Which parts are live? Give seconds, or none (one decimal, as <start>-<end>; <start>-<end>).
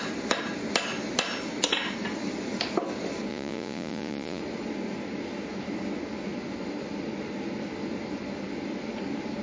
0.0-3.3; 4.4-9.4